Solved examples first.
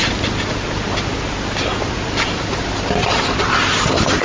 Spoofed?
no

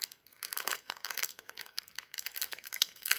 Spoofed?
yes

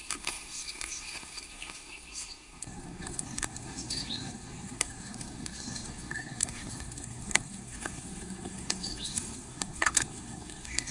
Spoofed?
yes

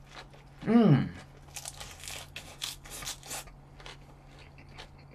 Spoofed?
no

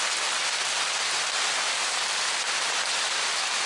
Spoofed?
no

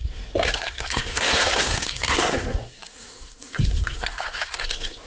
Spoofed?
yes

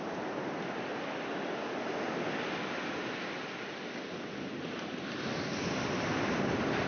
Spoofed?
no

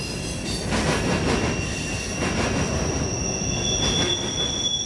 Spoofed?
no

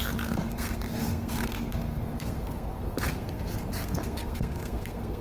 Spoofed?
yes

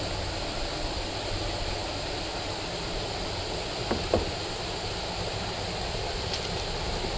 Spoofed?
no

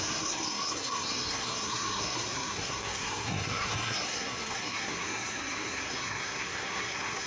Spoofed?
yes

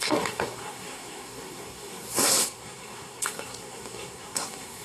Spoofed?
yes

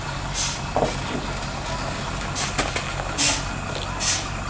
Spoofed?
no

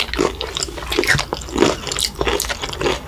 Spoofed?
no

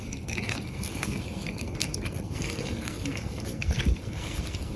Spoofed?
yes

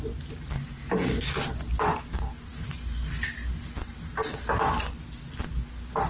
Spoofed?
no